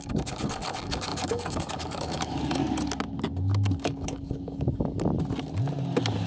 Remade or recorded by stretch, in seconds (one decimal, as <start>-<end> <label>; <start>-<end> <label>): 0.0-2.6 remade; 2.6-3.8 recorded; 3.8-5.1 remade; 5.1-6.3 recorded